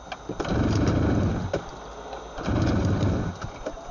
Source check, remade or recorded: remade